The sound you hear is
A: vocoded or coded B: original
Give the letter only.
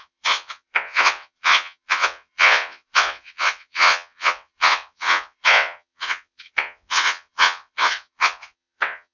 A